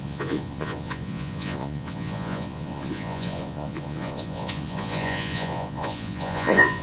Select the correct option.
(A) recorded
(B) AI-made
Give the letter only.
B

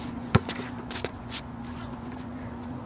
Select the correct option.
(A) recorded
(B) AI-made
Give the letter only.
B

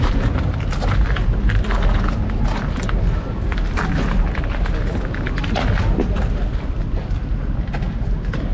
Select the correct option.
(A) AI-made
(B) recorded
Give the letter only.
B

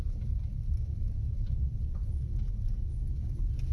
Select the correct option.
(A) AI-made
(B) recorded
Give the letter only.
B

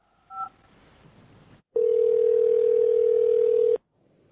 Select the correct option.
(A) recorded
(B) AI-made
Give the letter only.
A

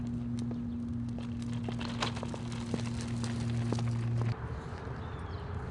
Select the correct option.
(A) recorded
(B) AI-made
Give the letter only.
A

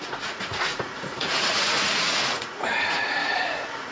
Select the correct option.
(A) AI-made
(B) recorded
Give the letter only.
A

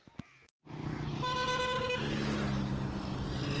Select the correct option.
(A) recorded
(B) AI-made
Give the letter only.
A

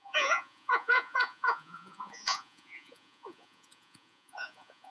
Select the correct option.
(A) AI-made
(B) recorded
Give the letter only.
A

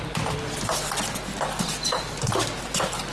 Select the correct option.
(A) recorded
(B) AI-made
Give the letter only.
A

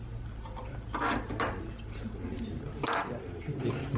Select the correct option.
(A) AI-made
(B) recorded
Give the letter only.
B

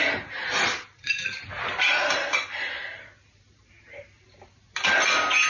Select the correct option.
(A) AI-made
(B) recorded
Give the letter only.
B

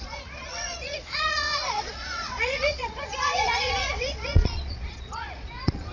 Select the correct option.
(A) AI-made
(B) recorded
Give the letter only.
A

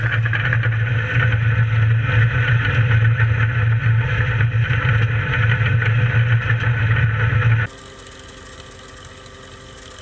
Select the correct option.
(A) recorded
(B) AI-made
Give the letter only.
A